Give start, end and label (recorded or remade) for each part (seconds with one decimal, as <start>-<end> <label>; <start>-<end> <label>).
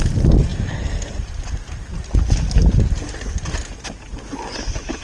0.0-5.0 recorded